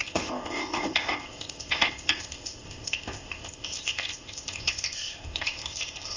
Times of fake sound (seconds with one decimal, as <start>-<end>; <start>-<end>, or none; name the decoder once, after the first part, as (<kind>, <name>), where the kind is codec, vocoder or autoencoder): 0.0-6.2 (codec, ZipCodec)